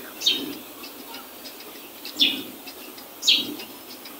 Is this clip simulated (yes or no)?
no